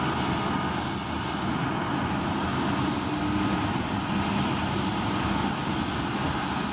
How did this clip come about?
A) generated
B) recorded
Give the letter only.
B